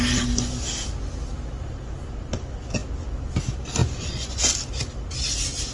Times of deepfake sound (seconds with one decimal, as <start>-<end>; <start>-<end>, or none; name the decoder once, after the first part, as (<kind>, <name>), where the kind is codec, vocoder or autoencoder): 3.8-4.5 (vocoder, Vocos)